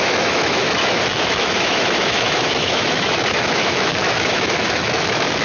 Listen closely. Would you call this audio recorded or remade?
remade